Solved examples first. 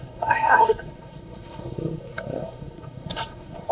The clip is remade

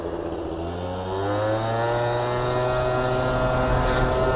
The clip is recorded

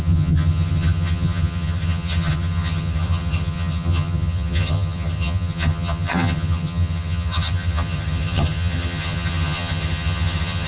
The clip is remade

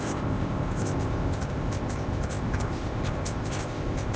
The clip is remade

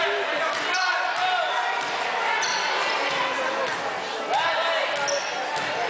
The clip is recorded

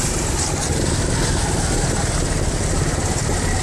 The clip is recorded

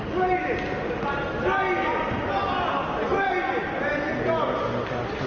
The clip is recorded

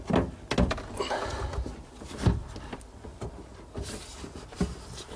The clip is recorded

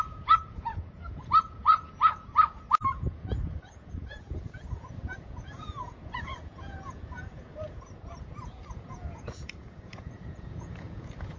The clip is remade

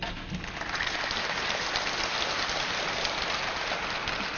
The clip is recorded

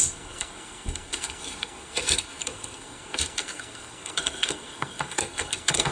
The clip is remade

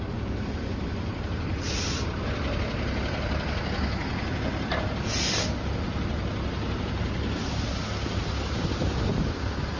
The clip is recorded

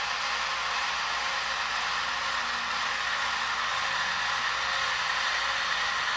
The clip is recorded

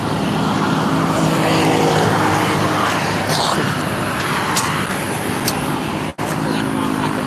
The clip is recorded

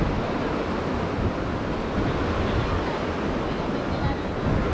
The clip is recorded